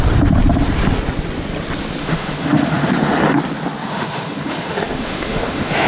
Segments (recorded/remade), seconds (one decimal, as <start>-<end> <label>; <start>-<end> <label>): 0.0-2.0 recorded; 2.0-2.9 remade; 2.9-3.9 recorded; 3.9-5.9 remade

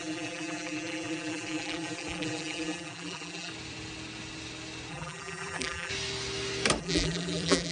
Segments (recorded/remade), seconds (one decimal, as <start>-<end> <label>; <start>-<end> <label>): 0.0-3.5 remade; 3.5-4.9 recorded; 4.9-5.9 remade; 5.9-6.8 recorded; 6.8-7.7 remade

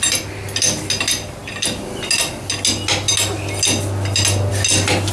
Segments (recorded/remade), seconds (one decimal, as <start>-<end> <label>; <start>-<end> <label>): 0.0-5.1 recorded

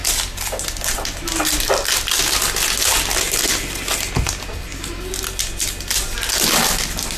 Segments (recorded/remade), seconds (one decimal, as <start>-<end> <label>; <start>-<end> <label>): 0.0-7.2 recorded